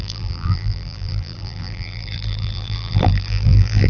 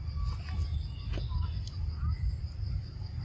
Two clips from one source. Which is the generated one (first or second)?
first